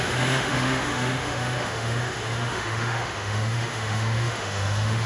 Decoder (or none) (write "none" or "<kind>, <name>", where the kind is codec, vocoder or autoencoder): autoencoder, DAC-VAE